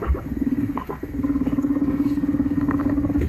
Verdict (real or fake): fake